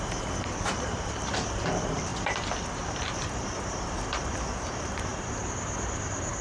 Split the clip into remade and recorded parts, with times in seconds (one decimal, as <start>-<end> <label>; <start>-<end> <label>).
0.0-2.1 remade; 2.1-3.0 recorded; 3.0-5.1 remade; 5.1-5.8 recorded; 5.8-6.4 remade